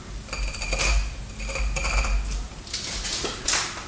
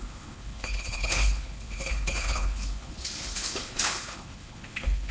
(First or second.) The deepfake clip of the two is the second